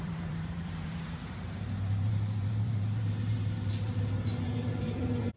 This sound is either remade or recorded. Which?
remade